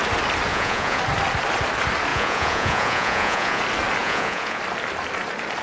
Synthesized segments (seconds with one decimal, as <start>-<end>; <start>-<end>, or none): 0.5-1.0; 2.1-3.6; 4.0-4.6